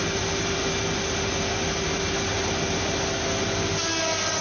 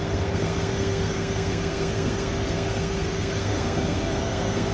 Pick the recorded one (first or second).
first